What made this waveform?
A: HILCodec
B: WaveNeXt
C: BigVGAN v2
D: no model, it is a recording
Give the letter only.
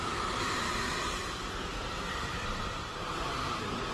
C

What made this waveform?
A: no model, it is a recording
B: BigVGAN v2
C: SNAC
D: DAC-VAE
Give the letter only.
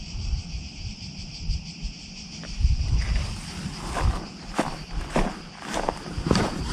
B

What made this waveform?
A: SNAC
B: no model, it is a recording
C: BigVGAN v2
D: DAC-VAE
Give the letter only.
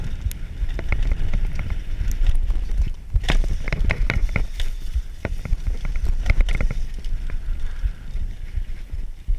C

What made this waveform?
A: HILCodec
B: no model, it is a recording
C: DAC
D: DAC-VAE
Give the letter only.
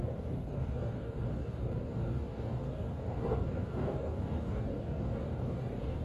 C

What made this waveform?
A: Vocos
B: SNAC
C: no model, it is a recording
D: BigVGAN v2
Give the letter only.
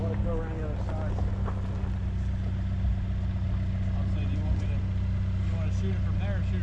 C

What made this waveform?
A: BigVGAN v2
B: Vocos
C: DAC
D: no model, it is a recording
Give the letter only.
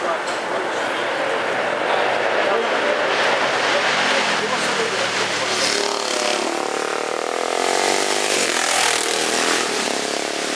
D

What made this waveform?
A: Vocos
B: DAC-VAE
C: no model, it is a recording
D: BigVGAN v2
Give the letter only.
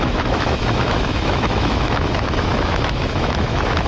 B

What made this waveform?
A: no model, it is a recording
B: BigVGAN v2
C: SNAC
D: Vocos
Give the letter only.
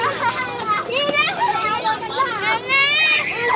A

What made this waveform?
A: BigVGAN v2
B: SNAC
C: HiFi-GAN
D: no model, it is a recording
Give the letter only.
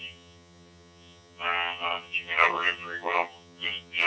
C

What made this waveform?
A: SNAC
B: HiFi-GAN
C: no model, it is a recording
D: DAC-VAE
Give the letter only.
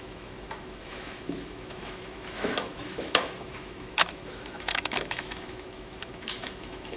D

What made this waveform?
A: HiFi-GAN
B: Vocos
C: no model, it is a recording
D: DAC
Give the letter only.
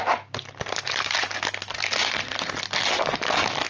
C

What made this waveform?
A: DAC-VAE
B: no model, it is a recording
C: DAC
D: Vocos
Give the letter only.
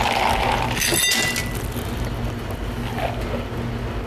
B